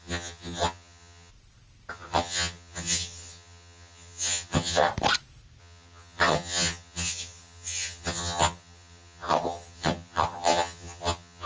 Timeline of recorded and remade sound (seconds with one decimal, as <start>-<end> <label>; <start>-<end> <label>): 0.0-1.3 remade; 1.3-1.9 recorded; 1.9-4.9 remade; 4.9-5.6 recorded; 5.6-11.5 remade